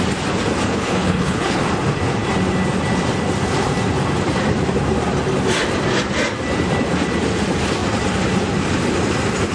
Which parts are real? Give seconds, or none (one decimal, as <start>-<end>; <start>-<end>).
0.0-0.7; 1.6-9.5